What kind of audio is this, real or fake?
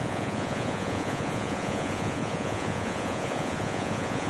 fake